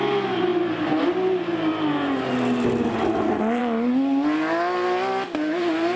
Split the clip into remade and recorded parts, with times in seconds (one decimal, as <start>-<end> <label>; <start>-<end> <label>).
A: 0.0-6.0 recorded